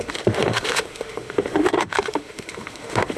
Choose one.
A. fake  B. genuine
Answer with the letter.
A